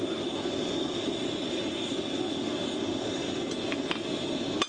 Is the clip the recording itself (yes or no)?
yes